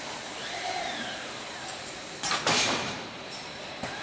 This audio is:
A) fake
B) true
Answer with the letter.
A